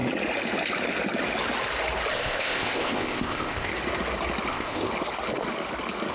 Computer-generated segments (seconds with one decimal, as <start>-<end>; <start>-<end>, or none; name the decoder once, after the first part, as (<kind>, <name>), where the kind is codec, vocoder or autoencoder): 2.1-3.7 (codec, ZipCodec); 4.5-4.9